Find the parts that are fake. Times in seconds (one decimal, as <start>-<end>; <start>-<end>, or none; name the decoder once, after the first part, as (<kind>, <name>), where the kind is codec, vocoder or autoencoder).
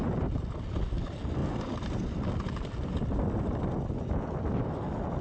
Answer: 1.4-3.9 (vocoder, BigVGAN v2)